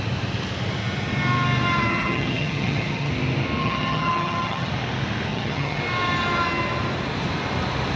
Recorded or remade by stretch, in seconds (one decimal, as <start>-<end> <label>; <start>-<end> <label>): 0.0-1.9 recorded; 1.9-3.1 remade; 3.1-3.6 recorded; 3.6-4.7 remade; 4.7-5.3 recorded; 5.3-5.8 remade; 5.8-8.0 recorded